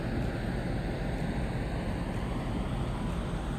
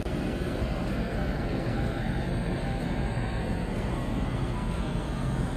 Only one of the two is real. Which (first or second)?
first